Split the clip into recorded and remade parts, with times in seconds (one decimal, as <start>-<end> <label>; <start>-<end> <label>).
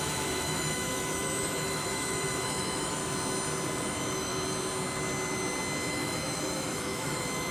0.0-3.0 remade; 3.0-3.9 recorded; 3.9-4.3 remade; 4.3-5.9 recorded; 5.9-7.5 remade